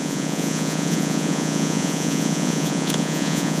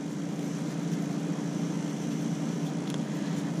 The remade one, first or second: first